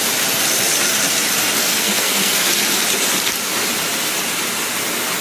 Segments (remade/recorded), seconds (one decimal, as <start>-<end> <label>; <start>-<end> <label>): 0.0-1.6 recorded; 1.6-2.5 remade; 2.5-5.2 recorded